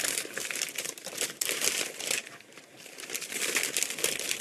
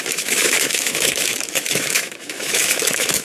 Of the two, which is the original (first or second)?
first